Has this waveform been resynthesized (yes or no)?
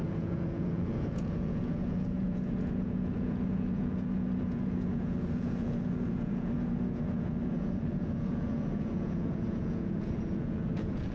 yes